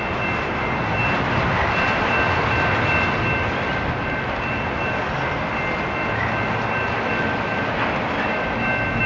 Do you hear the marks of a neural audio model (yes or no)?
no